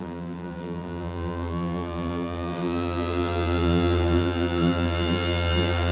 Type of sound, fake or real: fake